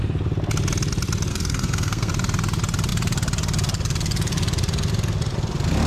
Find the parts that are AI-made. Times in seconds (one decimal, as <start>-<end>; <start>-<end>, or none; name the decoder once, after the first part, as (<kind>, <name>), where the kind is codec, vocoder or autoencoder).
1.3-2.1 (codec, SNAC)